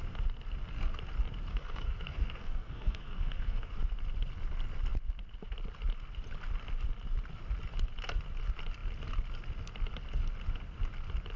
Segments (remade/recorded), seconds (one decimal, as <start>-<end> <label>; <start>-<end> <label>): 0.0-1.5 recorded; 1.5-3.7 remade; 3.7-11.4 recorded